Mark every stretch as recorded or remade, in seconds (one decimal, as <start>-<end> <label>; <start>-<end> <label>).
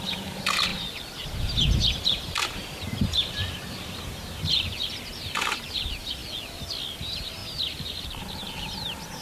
0.0-0.7 remade; 0.7-1.4 recorded; 1.4-6.2 remade; 6.2-7.0 recorded; 7.0-7.4 remade; 7.4-8.2 recorded; 8.2-9.2 remade